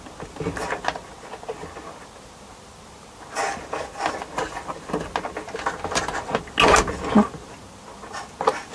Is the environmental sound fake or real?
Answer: real